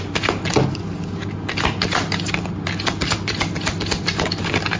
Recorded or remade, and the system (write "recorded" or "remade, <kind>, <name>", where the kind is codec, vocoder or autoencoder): recorded